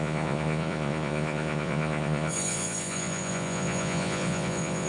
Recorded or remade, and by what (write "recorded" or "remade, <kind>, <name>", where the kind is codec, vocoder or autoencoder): remade, vocoder, Vocos